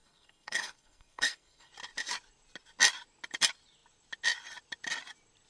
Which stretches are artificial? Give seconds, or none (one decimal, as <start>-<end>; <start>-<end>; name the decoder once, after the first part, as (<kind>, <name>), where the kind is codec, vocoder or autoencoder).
0.0-1.7 (codec, SNAC)